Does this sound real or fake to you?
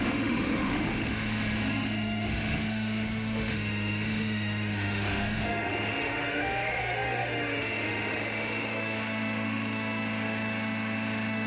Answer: fake